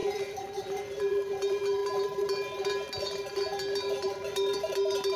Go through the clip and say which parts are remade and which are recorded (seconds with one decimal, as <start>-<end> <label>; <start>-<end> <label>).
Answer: 0.0-1.8 remade; 1.8-3.3 recorded; 3.3-5.2 remade